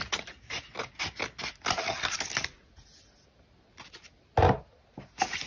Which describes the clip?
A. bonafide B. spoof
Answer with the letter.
A